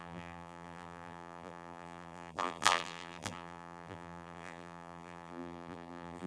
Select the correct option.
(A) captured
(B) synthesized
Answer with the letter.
B